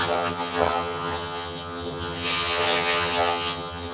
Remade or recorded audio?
remade